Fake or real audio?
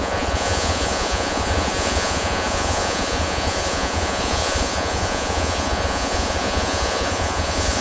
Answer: fake